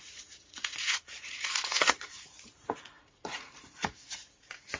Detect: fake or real fake